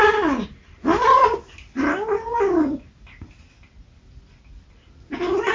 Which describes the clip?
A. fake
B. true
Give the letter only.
B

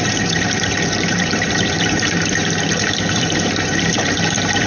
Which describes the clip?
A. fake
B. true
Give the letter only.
A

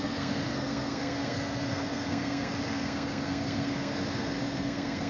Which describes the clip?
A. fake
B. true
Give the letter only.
A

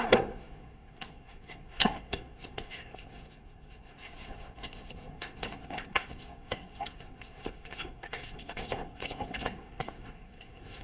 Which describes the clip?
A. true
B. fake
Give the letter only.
B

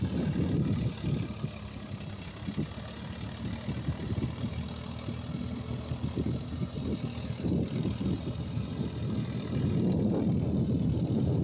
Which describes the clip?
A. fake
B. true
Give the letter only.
B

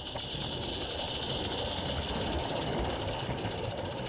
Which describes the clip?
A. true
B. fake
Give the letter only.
A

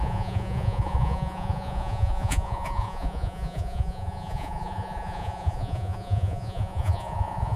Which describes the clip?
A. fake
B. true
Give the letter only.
A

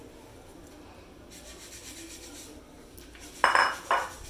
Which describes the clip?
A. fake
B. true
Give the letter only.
B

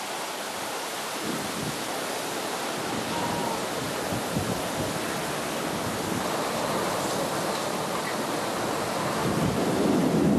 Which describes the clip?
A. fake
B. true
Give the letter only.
B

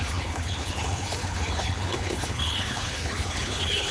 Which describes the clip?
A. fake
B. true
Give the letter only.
A